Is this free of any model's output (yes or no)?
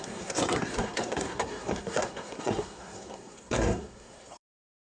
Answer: no